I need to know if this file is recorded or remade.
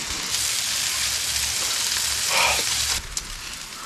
recorded